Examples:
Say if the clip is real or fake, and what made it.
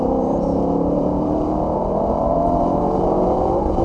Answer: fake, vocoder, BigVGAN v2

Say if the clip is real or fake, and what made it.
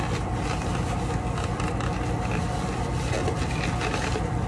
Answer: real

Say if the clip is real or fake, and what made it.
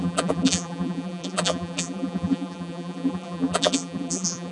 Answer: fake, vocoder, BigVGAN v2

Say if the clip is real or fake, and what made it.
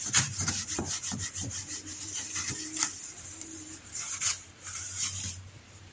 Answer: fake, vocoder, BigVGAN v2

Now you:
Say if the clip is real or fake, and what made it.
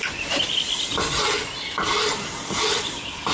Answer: real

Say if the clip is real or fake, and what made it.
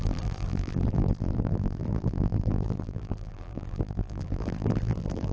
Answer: fake, vocoder, BigVGAN v2